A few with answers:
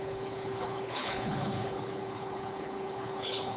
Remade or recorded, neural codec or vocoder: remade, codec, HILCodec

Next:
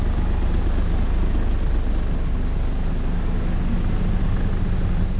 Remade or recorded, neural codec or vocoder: recorded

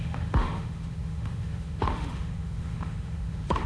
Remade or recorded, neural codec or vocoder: remade, autoencoder, DAC-VAE